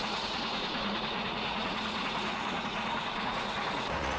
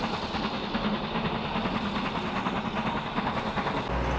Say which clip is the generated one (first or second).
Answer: first